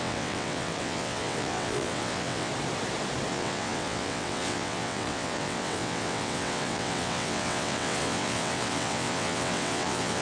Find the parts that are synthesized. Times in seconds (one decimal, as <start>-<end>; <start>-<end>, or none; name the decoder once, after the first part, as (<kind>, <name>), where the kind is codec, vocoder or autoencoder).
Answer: 0.0-2.5 (vocoder, WaveNeXt); 3.3-10.2